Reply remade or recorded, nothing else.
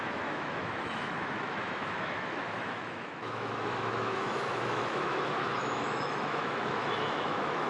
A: remade